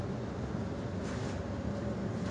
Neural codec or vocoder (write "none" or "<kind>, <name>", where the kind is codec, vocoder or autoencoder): none